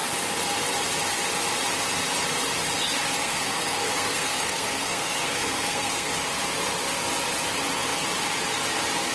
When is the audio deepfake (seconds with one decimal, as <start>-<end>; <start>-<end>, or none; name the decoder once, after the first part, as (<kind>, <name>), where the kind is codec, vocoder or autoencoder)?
3.2-6.1 (codec, SNAC)